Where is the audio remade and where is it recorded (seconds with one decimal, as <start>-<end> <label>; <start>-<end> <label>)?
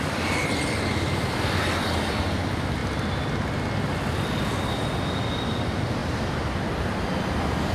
0.0-7.7 recorded